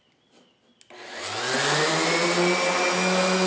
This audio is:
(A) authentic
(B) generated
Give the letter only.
A